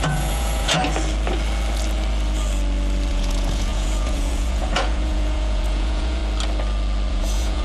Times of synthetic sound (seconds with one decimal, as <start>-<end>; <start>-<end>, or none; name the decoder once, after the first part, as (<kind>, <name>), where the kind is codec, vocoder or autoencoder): 0.0-0.8 (vocoder, Vocos); 3.1-6.2; 7.1-7.6